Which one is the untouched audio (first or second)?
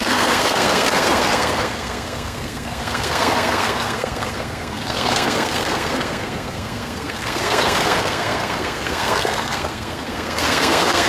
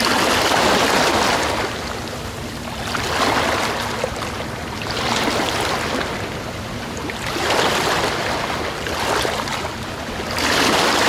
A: second